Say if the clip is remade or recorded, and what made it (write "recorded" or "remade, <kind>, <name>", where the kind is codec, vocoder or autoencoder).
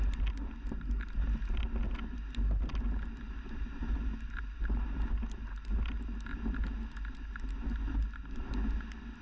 recorded